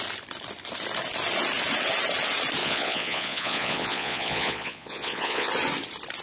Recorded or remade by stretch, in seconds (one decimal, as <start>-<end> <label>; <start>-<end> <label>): 0.0-2.6 recorded; 2.6-5.5 remade; 5.5-6.2 recorded